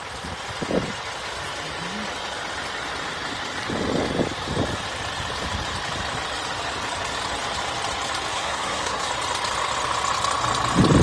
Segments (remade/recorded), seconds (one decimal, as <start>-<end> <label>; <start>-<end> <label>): 0.0-8.3 recorded; 8.3-9.1 remade; 9.1-11.0 recorded